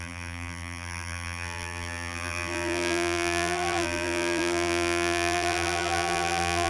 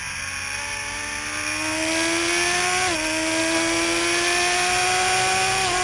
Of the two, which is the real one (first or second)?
second